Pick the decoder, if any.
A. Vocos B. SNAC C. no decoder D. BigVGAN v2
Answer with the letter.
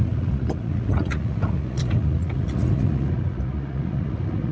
A